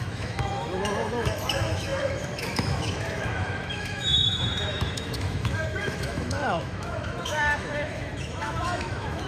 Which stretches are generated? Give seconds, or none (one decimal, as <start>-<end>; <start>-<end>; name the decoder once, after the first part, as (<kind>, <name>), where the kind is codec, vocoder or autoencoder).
0.0-9.3 (autoencoder, DAC-VAE)

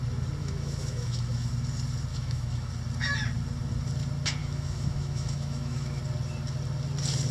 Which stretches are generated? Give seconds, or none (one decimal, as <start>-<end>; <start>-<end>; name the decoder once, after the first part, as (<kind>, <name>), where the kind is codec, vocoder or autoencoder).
0.4-1.5 (autoencoder, DAC-VAE); 2.1-2.7; 4.4-6.0

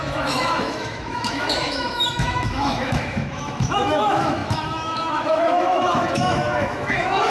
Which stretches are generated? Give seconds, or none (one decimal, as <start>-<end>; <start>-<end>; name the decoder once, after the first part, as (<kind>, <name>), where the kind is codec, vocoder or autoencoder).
0.0-7.3 (autoencoder, DAC-VAE)

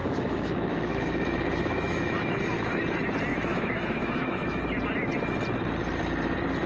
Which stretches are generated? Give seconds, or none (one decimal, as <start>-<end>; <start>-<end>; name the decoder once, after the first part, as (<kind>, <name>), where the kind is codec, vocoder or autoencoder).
0.0-2.8 (autoencoder, DAC-VAE); 3.3-4.6

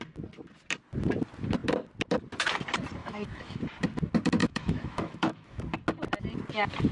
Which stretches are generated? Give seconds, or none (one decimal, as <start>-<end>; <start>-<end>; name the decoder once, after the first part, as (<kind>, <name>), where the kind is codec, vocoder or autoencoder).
3.0-3.6 (autoencoder, DAC-VAE); 4.4-5.6

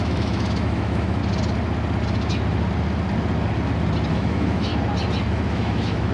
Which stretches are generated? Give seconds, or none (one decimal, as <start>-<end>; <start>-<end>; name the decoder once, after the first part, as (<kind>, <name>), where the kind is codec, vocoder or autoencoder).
0.0-1.2 (autoencoder, DAC-VAE); 4.1-4.7; 5.3-6.1

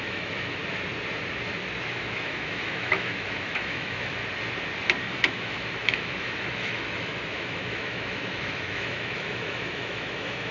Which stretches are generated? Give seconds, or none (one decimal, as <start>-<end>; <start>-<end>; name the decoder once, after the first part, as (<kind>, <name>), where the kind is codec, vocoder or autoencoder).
0.0-0.6 (autoencoder, DAC-VAE); 1.9-4.2; 5.0-10.5